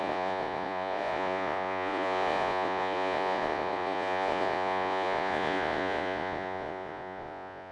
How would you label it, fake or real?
fake